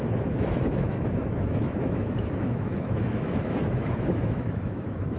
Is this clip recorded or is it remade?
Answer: remade